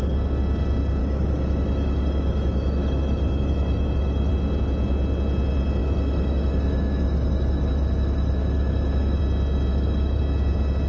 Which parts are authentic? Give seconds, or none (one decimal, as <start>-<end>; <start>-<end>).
0.0-1.0; 4.3-5.8; 9.2-9.7; 10.2-10.9